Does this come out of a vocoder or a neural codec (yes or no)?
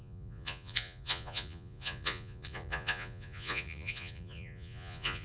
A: yes